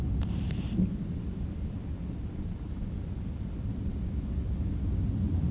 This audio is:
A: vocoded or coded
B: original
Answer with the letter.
B